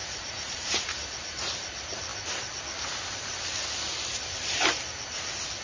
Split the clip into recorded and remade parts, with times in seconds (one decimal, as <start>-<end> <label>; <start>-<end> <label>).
0.0-0.9 remade; 0.9-5.6 recorded